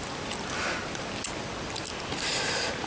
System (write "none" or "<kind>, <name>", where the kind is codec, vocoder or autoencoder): none